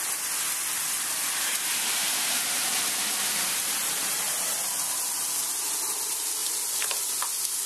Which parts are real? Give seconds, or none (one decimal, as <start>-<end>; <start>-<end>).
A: 0.0-1.5; 4.7-6.4; 7.1-7.7